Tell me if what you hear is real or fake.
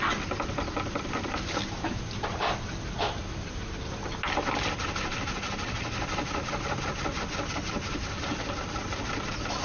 real